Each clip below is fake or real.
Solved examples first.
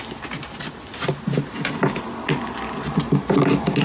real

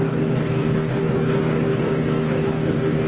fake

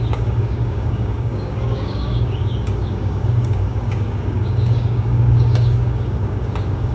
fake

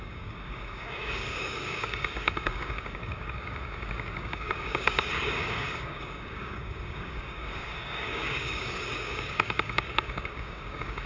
fake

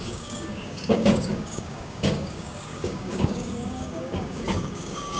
fake